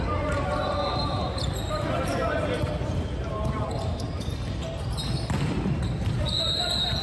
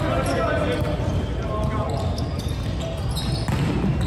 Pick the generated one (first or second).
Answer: first